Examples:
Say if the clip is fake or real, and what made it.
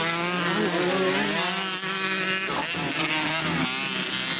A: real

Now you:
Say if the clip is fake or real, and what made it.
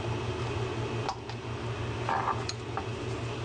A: real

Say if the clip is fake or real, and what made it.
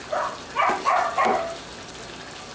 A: real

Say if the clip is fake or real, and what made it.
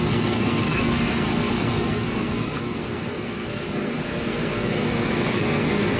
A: fake, codec, SNAC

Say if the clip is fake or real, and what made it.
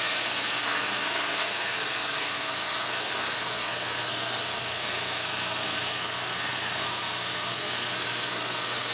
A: fake, codec, SNAC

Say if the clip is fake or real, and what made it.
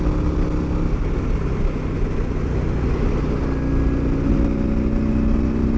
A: real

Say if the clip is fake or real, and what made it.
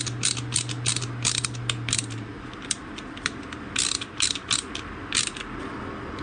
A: real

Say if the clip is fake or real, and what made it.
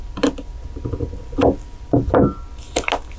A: real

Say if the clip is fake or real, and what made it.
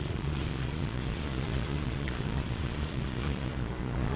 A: fake, vocoder, Vocos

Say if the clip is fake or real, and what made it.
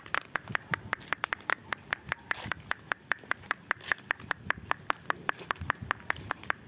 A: fake, vocoder, BigVGAN v2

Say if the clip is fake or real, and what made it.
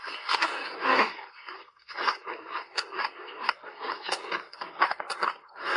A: fake, codec, SNAC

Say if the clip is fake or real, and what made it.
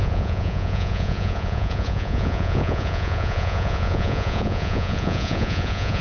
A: fake, vocoder, Vocos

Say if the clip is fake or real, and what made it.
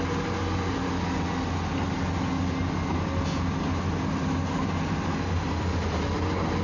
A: real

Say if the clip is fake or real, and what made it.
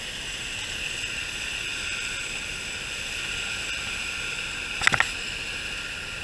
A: real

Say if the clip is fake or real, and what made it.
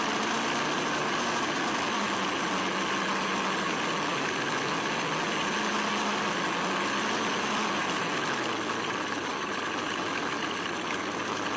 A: real